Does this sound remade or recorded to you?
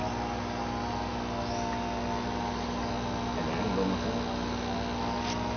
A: recorded